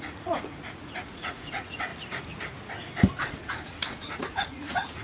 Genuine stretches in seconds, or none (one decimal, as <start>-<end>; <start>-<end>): 1.9-3.2